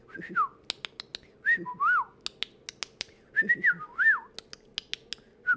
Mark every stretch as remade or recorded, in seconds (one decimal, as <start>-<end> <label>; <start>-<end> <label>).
0.0-5.6 recorded